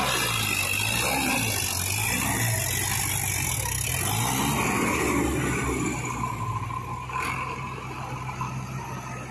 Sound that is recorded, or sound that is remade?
recorded